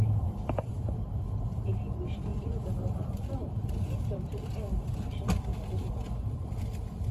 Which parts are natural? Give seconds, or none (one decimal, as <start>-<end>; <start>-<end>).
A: 0.0-2.3; 4.5-7.1